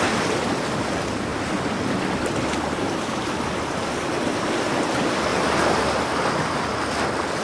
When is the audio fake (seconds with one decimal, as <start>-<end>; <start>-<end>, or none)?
none